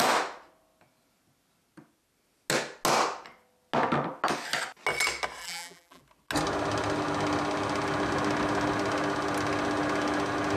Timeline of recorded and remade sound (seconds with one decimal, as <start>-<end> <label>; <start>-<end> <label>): 0.0-5.4 recorded; 5.4-6.0 remade; 6.0-10.6 recorded